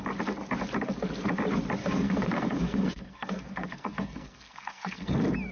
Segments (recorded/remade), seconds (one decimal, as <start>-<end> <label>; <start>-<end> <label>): 0.0-1.8 recorded; 1.8-5.1 remade; 5.1-5.5 recorded

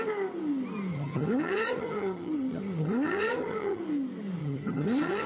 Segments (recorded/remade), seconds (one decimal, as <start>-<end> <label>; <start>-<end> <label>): 0.0-0.9 recorded; 0.9-3.8 remade; 3.8-4.4 recorded; 4.4-5.3 remade

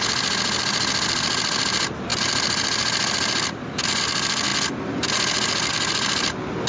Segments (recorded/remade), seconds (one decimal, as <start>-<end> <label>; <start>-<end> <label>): 0.0-6.7 recorded

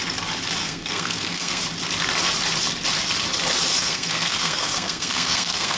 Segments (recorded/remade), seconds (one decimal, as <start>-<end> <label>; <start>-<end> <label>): 0.0-0.6 recorded; 0.6-1.6 remade; 1.6-3.8 recorded; 3.8-5.8 remade

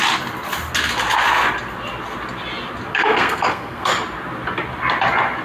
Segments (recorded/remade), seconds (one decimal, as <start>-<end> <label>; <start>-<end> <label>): 0.0-2.9 recorded; 2.9-3.9 remade; 3.9-5.4 recorded

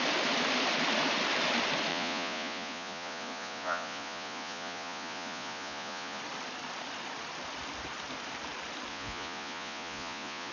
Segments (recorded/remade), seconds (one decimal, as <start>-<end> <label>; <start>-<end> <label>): 0.0-1.9 recorded; 1.9-6.2 remade; 6.2-8.9 recorded; 8.9-10.5 remade